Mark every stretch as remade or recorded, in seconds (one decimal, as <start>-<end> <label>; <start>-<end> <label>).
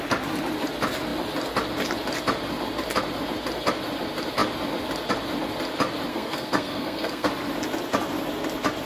0.0-6.1 recorded; 6.1-7.3 remade; 7.3-8.9 recorded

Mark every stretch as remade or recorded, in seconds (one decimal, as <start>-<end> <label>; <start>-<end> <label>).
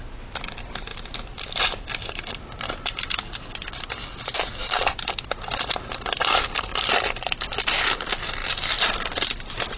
0.0-9.8 recorded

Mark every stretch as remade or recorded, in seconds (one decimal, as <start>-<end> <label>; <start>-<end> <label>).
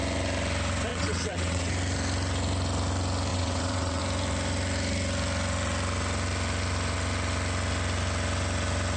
0.0-0.9 recorded; 0.9-1.7 remade; 1.7-3.3 recorded; 3.3-4.0 remade; 4.0-9.0 recorded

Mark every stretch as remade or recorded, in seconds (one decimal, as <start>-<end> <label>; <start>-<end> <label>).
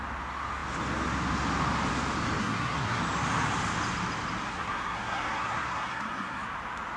0.0-2.4 recorded; 2.4-3.0 remade; 3.0-4.5 recorded; 4.5-6.4 remade; 6.4-7.0 recorded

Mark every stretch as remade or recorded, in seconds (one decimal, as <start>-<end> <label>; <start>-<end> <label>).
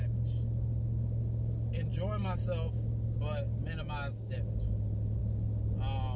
0.0-6.2 recorded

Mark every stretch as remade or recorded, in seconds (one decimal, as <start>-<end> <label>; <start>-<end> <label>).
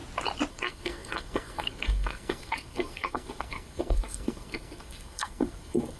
0.0-0.5 recorded; 0.5-6.0 remade